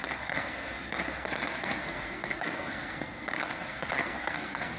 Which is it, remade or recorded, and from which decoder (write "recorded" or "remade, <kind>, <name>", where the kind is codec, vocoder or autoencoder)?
remade, codec, SNAC